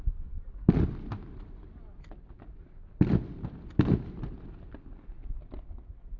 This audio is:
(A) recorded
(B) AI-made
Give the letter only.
A